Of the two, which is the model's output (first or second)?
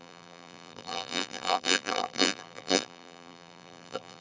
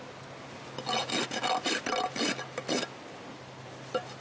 first